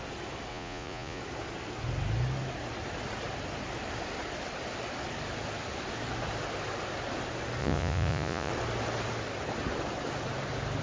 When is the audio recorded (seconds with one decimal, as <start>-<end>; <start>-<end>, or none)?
0.0-0.5; 1.2-7.6; 8.5-10.8